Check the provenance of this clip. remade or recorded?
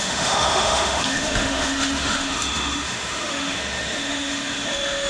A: remade